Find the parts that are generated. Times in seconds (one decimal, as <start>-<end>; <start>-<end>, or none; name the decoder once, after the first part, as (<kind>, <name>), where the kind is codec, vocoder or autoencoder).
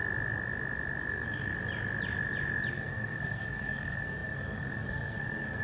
1.1-1.5 (codec, SNAC); 2.7-5.6